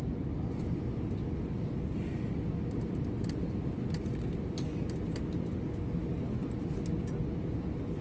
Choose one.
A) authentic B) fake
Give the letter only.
A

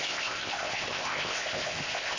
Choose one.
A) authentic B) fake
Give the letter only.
B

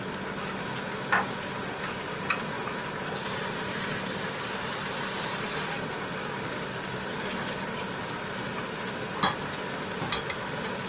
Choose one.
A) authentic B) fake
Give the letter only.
A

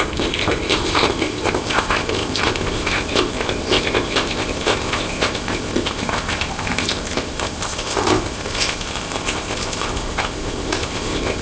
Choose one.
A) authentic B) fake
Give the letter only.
B